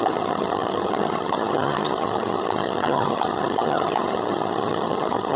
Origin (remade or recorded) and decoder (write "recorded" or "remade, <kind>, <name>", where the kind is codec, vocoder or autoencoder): remade, vocoder, HiFi-GAN